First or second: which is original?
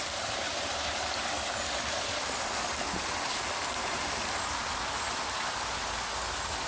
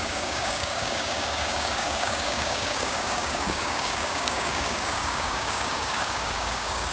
first